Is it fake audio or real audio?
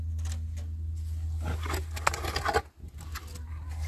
real